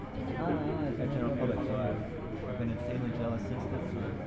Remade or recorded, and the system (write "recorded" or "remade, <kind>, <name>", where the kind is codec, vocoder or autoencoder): recorded